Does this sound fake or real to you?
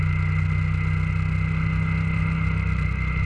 real